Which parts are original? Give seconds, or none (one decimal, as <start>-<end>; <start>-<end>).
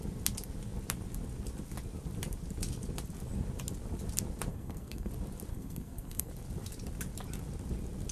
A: 0.0-4.5; 5.1-5.5; 6.3-8.1